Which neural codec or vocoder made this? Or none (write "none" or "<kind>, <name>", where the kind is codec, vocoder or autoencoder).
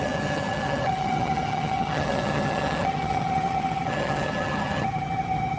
vocoder, HiFi-GAN